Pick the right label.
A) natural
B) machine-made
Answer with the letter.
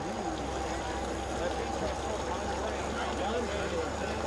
A